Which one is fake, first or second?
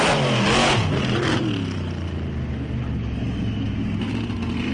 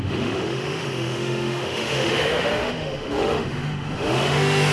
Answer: second